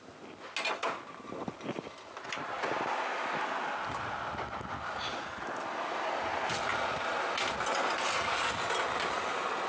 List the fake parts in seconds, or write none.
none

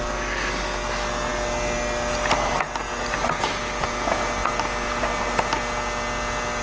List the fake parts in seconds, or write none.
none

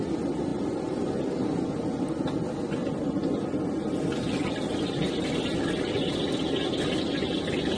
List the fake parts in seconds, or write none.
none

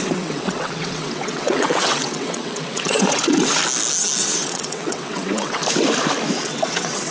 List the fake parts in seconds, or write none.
0.0-3.6 (vocoder, WaveNeXt); 4.2-5.6; 6.3-7.1

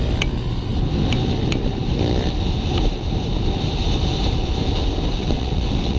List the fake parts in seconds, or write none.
5.2-6.0 (vocoder, WaveNeXt)

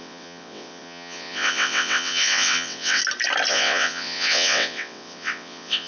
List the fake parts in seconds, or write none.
0.0-3.0 (vocoder, WaveNeXt); 3.5-5.9

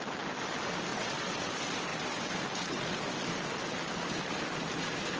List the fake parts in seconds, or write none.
0.9-1.5 (vocoder, WaveNeXt)